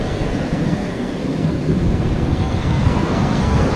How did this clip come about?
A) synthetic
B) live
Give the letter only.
A